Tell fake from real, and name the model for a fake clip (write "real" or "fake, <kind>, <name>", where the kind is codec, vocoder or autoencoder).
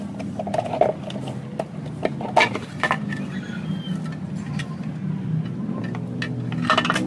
real